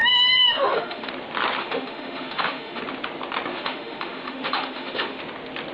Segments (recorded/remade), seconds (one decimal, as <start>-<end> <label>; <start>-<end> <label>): 0.0-1.1 remade; 1.1-1.6 recorded; 1.6-2.8 remade; 2.8-3.5 recorded; 3.5-5.2 remade; 5.2-5.7 recorded